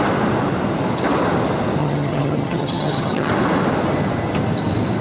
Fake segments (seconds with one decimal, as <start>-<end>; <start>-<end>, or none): 1.8-3.3